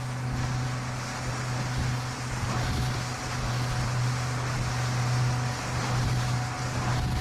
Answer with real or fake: real